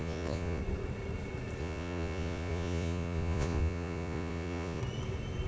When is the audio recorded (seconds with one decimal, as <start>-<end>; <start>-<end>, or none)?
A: 0.6-1.6; 4.8-5.5